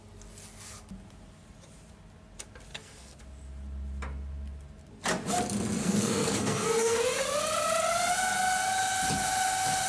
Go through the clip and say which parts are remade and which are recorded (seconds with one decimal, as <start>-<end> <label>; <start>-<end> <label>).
0.0-2.7 recorded; 2.7-3.2 remade; 3.2-5.8 recorded; 5.8-7.0 remade; 7.0-9.9 recorded